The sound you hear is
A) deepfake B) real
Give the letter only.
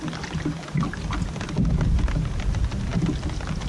B